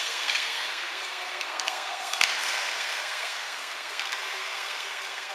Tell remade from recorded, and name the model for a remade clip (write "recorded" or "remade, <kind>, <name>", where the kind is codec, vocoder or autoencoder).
remade, codec, SNAC